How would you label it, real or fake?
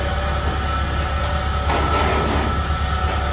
real